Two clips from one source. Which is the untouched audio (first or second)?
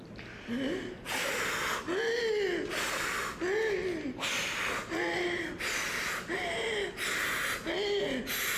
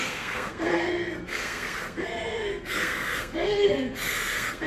first